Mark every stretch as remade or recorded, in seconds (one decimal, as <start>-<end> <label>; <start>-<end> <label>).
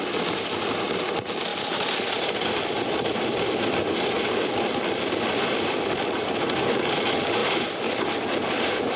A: 0.0-1.5 recorded; 1.5-6.3 remade; 6.3-9.0 recorded